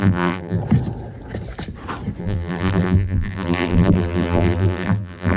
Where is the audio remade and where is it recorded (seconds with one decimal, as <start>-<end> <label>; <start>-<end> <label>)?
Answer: 0.0-0.6 remade; 0.6-2.2 recorded; 2.2-5.4 remade